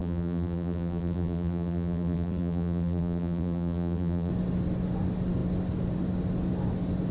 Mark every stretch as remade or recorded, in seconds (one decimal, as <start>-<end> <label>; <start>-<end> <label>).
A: 0.0-4.3 remade; 4.3-7.1 recorded